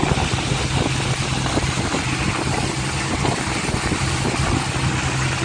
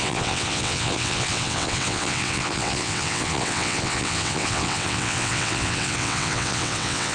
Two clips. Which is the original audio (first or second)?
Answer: first